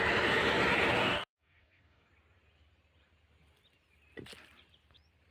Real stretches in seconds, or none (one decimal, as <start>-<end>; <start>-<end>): 0.0-1.0; 2.1-5.3